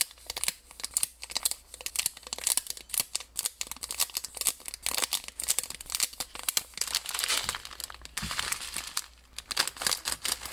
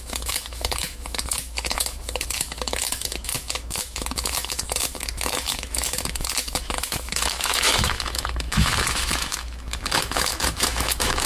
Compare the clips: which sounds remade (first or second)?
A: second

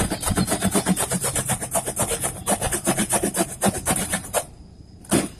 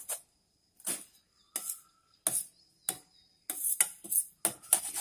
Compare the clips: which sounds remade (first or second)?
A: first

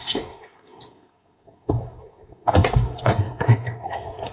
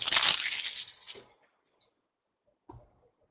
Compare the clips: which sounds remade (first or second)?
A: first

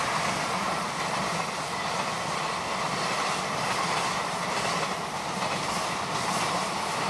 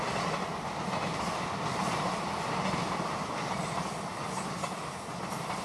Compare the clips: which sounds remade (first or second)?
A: first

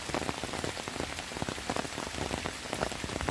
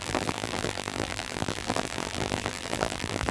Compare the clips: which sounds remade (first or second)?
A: second